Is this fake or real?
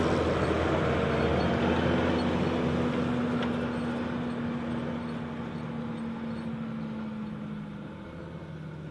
real